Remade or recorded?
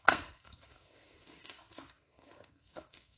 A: remade